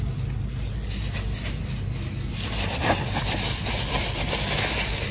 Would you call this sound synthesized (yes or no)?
no